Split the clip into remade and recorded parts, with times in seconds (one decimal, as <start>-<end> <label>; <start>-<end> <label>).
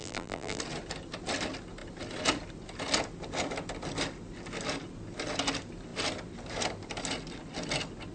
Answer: 0.0-0.6 remade; 0.6-8.1 recorded